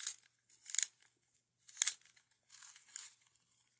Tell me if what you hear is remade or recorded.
recorded